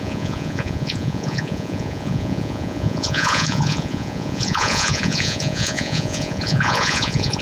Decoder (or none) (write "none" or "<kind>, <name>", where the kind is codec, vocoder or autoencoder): vocoder, Vocos